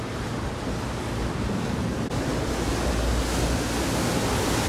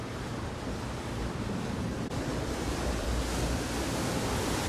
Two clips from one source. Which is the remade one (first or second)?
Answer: second